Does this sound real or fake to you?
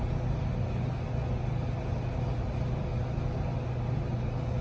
real